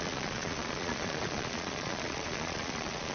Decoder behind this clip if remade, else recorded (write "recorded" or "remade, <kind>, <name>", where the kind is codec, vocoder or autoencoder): remade, vocoder, Vocos